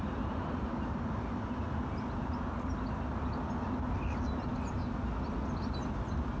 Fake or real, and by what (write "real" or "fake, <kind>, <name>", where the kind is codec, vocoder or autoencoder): real